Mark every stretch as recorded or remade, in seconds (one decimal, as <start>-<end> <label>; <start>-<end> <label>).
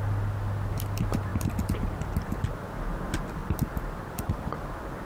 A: 0.0-1.3 recorded; 1.3-2.5 remade; 2.5-3.4 recorded; 3.4-4.2 remade; 4.2-5.0 recorded